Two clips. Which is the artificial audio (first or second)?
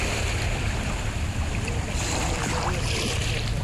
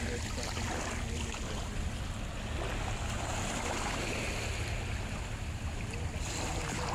first